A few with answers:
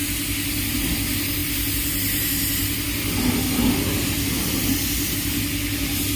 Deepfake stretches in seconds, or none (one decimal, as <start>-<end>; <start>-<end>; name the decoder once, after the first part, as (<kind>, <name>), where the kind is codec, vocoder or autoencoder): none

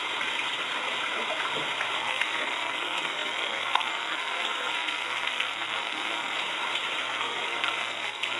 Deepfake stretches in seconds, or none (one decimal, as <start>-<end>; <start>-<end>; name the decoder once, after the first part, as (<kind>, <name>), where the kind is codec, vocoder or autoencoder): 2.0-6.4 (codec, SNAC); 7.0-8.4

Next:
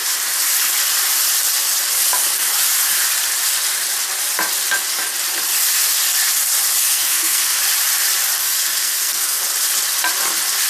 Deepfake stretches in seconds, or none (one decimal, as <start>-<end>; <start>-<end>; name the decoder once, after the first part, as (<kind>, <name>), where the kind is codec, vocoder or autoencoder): 6.8-7.6 (codec, SNAC); 8.4-9.4